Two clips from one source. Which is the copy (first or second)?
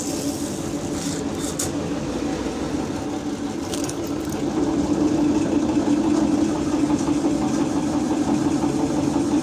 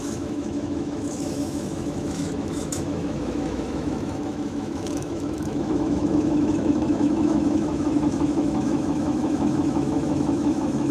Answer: second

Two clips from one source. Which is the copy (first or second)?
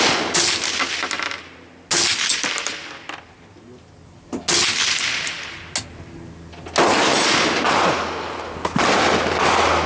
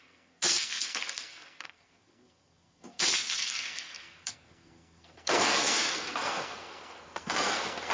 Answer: second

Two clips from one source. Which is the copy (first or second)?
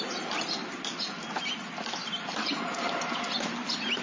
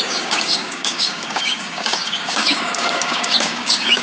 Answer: second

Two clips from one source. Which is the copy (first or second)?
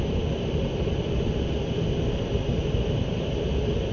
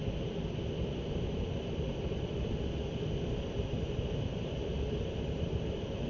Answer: second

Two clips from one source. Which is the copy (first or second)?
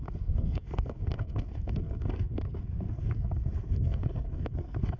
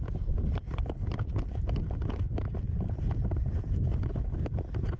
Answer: first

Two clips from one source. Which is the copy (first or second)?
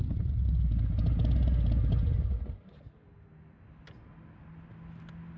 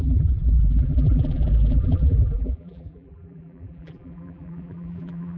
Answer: second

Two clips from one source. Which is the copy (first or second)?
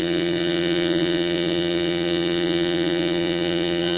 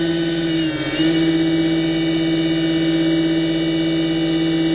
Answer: first